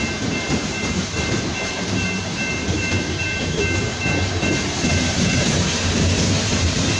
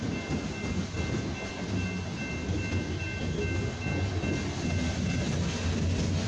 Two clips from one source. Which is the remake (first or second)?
first